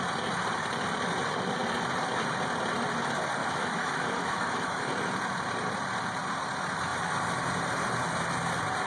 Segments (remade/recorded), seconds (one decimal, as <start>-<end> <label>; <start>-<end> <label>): 0.0-3.4 recorded; 3.4-4.9 remade; 4.9-8.9 recorded